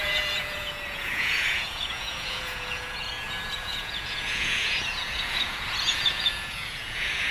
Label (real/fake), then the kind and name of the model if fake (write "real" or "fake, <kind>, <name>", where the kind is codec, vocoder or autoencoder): fake, vocoder, Vocos